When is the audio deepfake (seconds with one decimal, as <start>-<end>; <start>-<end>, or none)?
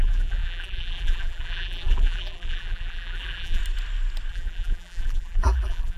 0.0-3.6; 4.3-6.0